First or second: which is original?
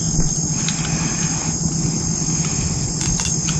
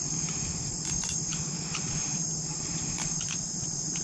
first